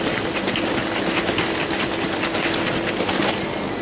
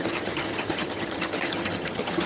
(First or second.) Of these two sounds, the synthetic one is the second